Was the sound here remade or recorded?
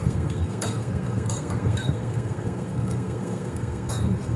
remade